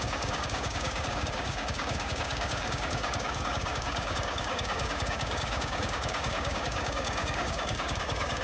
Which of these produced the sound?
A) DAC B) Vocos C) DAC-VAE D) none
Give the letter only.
A